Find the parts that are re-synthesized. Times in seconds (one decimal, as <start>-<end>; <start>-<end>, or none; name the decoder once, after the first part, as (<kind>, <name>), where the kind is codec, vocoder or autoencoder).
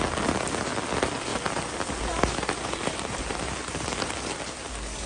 1.3-4.1 (vocoder, BigVGAN v2)